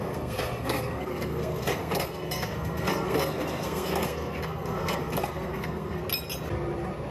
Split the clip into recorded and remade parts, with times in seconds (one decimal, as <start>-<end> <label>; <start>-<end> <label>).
0.0-6.0 remade; 6.0-7.1 recorded